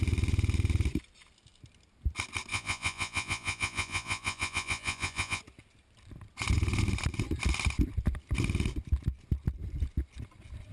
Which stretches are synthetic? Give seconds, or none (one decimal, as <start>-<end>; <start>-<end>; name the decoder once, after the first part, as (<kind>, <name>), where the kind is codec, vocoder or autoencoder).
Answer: 2.5-5.4 (vocoder, Vocos)